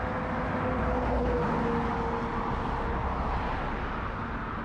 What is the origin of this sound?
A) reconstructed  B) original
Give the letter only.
B